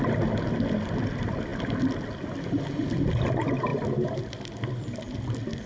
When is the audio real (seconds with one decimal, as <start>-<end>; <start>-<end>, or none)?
0.0-3.7